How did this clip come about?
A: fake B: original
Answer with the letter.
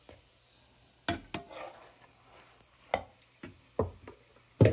B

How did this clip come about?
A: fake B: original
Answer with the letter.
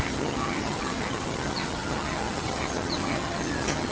A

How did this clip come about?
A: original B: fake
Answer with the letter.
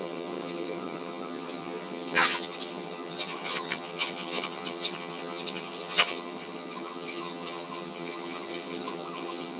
B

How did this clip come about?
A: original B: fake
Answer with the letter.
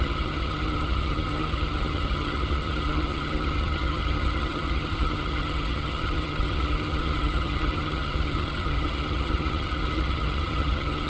B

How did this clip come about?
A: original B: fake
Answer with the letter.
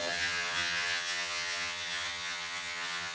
B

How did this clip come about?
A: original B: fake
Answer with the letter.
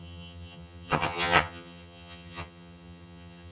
B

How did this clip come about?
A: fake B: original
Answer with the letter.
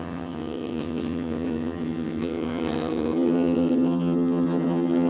A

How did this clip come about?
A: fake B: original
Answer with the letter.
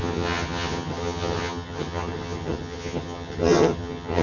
A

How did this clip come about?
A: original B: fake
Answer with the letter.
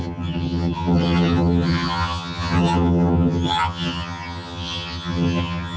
B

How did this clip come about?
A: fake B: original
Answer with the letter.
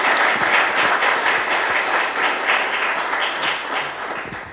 B